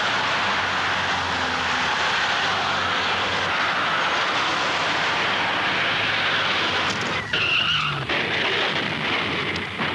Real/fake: real